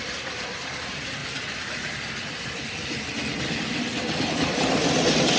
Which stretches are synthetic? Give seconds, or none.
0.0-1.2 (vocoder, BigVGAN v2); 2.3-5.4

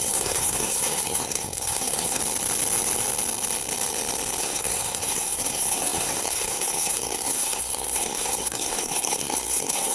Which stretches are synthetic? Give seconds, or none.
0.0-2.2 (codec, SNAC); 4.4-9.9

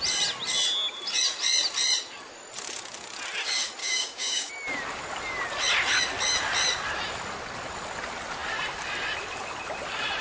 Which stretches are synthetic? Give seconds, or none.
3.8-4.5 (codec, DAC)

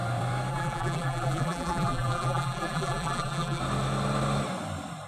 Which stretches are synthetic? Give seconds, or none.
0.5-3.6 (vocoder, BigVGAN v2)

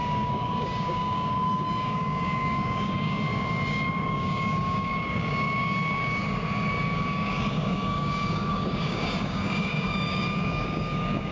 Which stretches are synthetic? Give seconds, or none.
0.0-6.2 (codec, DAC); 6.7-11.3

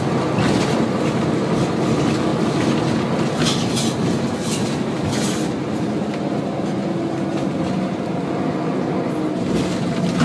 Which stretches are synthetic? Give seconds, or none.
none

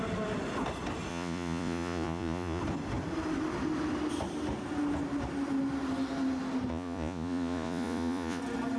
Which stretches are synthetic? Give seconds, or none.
1.1-2.6 (vocoder, Vocos); 6.7-8.4

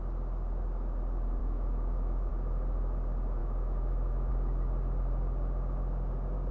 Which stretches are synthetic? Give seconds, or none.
1.4-2.3 (autoencoder, DAC-VAE); 3.4-4.3